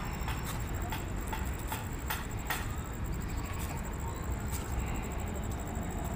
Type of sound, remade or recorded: recorded